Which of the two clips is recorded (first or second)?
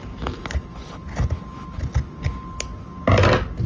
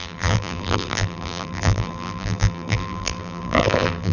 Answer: first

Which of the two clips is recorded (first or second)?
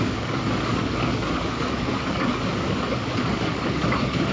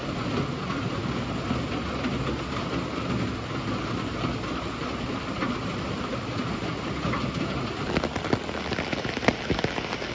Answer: second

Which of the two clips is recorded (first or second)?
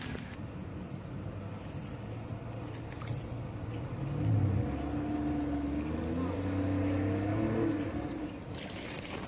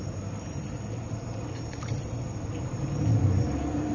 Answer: first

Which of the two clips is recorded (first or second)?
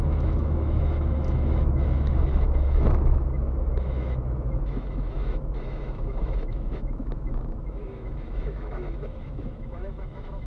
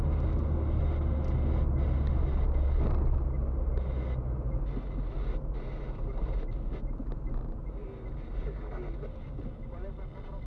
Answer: second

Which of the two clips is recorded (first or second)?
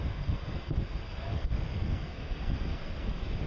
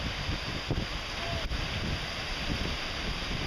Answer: second